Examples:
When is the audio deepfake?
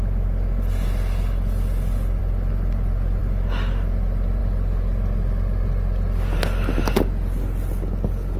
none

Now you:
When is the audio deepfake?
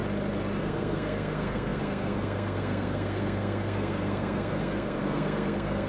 0.6-5.9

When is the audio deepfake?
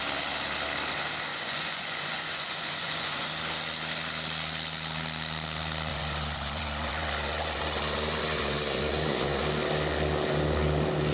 1.3-3.3; 5.9-9.4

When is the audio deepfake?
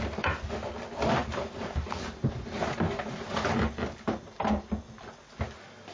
1.2-4.6